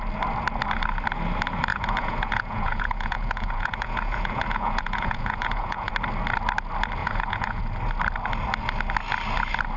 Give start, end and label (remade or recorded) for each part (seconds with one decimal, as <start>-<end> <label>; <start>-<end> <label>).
0.0-1.7 recorded; 1.7-5.9 remade; 5.9-7.0 recorded; 7.0-7.6 remade; 7.6-9.8 recorded